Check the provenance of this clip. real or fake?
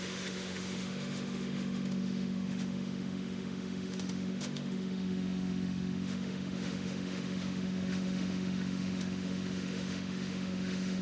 fake